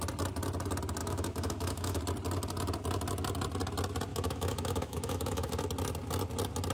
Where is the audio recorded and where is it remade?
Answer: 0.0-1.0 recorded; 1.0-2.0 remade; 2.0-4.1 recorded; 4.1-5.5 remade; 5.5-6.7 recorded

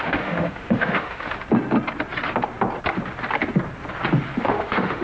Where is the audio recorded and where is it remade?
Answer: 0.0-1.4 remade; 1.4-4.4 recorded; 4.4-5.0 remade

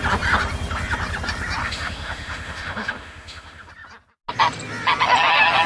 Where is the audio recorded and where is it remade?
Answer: 0.0-1.6 recorded; 1.6-3.7 remade; 3.7-5.7 recorded

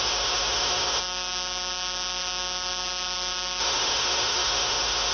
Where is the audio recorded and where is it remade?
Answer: 0.0-1.0 remade; 1.0-3.6 recorded; 3.6-5.1 remade